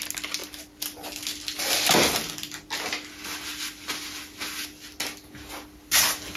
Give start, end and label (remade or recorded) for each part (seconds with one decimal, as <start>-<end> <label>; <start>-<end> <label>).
0.0-6.4 recorded